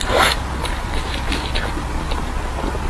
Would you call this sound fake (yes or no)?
yes